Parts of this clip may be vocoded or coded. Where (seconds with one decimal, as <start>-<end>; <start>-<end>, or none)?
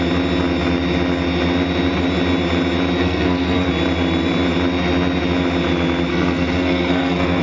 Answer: 3.0-3.7; 6.1-7.4